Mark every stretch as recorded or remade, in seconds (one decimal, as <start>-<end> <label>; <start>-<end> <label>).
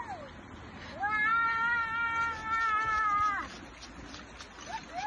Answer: 0.0-5.1 recorded